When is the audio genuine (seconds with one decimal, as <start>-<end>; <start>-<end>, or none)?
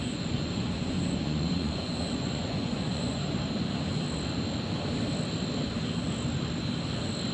3.3-7.3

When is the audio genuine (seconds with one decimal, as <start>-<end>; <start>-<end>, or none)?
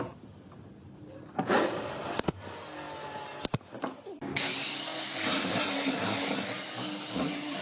0.0-7.6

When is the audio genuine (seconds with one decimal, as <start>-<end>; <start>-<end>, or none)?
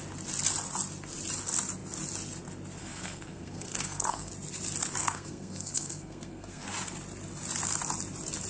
0.0-2.8; 4.3-5.0; 6.7-8.5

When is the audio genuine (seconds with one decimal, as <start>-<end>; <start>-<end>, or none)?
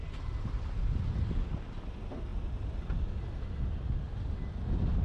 0.0-5.0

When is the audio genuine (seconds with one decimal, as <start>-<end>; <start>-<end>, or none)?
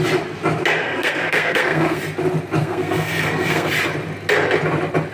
0.0-0.8; 2.0-2.6; 3.7-5.1